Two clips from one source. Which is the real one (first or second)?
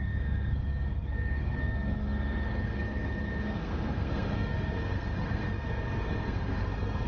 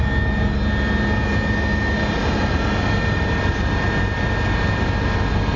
second